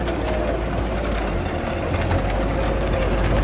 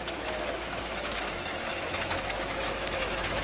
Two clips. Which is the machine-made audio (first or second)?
second